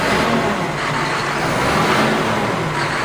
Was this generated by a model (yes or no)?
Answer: no